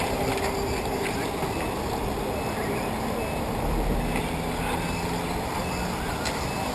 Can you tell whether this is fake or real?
real